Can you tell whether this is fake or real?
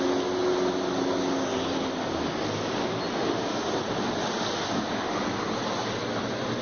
real